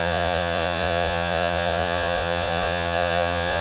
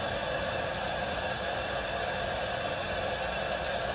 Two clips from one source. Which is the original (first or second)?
second